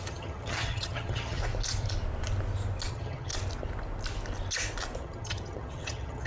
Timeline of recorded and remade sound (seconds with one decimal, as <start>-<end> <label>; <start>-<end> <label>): 0.0-1.4 remade; 1.4-2.9 recorded; 2.9-3.3 remade; 3.3-5.0 recorded; 5.0-6.3 remade